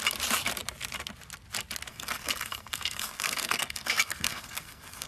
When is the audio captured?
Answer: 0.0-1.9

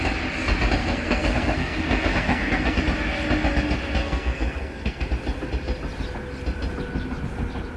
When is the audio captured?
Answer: 0.0-0.8; 2.8-4.0; 5.1-7.8

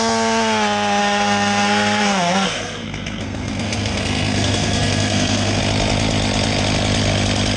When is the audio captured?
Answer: 0.0-1.0; 5.6-7.6